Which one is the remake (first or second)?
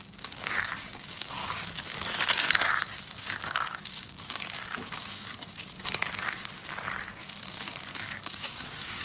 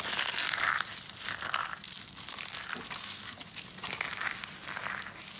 first